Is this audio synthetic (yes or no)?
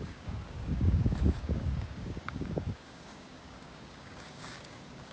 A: yes